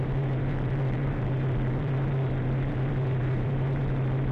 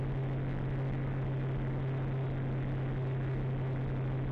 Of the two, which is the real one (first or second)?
second